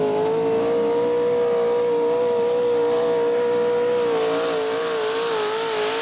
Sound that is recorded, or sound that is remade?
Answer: recorded